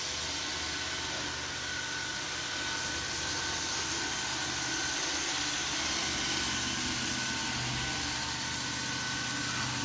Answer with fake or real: real